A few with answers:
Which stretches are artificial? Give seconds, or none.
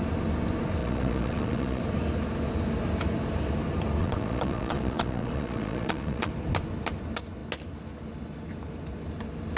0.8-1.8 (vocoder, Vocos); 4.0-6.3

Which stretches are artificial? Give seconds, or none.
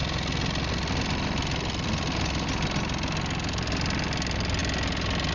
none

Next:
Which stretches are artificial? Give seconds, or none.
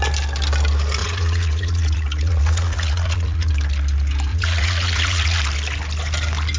1.0-3.5 (vocoder, Vocos); 4.3-5.4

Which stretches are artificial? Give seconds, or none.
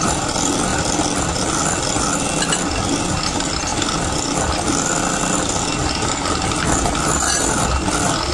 none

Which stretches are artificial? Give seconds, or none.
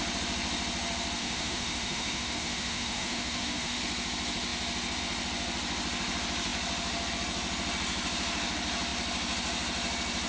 1.2-3.8 (autoencoder, DAC-VAE)